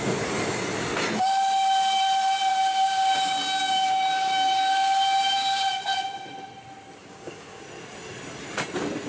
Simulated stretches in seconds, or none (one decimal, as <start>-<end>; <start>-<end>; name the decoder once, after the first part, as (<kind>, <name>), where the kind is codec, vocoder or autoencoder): 2.5-5.7 (codec, DAC); 7.0-7.6